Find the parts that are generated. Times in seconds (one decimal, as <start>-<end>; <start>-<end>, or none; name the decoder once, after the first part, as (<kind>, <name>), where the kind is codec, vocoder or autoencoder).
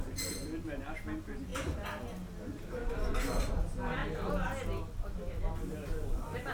none